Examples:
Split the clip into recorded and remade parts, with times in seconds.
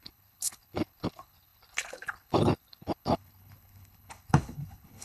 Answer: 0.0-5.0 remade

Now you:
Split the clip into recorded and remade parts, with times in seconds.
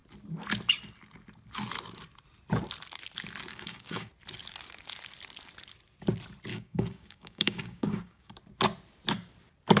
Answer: 0.0-3.5 recorded; 3.5-4.1 remade; 4.1-6.5 recorded; 6.5-8.3 remade; 8.3-9.8 recorded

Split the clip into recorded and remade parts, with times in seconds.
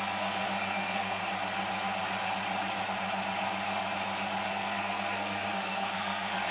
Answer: 0.0-1.2 remade; 1.2-4.5 recorded; 4.5-6.5 remade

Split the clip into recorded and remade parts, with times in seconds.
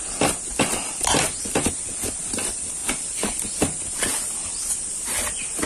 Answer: 0.0-5.7 recorded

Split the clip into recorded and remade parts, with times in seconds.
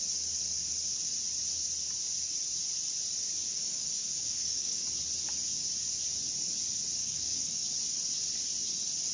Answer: 0.0-3.4 recorded; 3.4-4.8 remade; 4.8-7.0 recorded; 7.0-7.7 remade; 7.7-9.1 recorded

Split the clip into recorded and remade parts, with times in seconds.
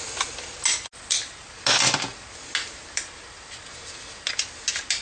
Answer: 0.0-5.0 recorded